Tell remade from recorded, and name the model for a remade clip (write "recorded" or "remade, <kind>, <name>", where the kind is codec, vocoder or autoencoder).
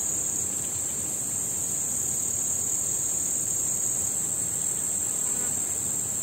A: recorded